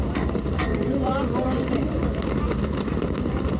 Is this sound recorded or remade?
remade